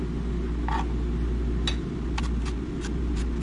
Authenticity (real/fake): real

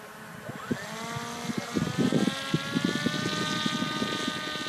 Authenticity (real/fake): real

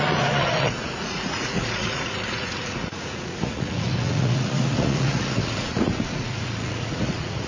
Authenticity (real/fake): fake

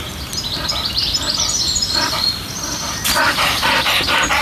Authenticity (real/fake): real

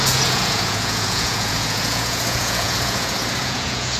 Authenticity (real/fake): fake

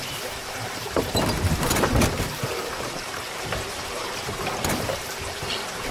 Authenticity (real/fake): fake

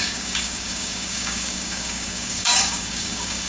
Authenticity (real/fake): fake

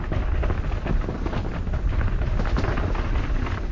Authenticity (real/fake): real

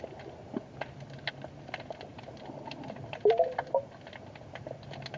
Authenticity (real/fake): real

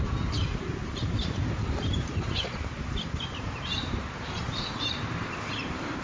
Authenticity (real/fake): fake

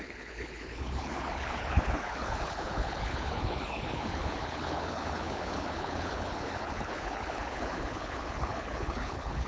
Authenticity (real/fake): fake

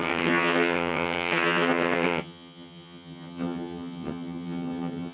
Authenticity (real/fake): fake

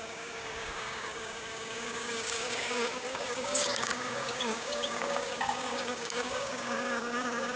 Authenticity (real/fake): fake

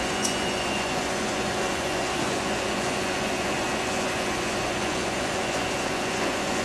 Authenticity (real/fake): fake